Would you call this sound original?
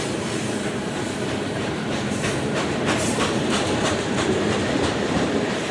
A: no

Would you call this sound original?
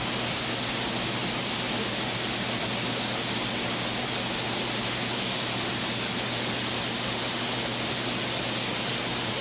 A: yes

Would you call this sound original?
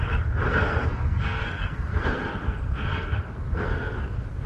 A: no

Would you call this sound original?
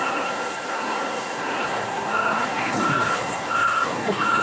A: no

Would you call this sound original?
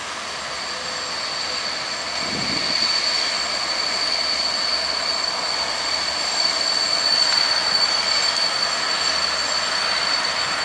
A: yes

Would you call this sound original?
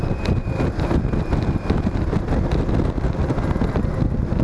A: yes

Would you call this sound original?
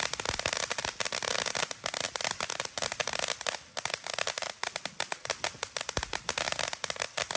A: no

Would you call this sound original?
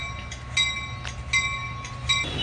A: yes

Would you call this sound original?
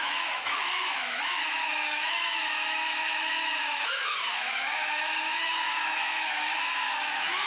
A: no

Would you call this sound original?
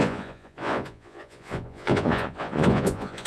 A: no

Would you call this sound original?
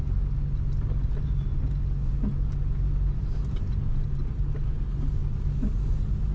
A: yes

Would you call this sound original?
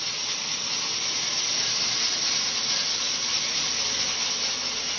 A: yes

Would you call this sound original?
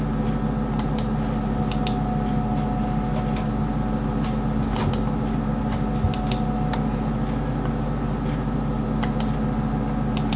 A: yes